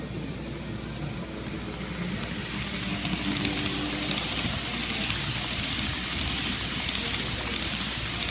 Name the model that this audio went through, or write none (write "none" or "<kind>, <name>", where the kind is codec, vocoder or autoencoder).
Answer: none